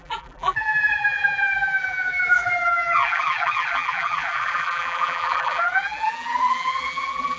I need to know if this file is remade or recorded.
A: remade